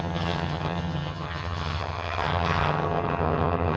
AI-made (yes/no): yes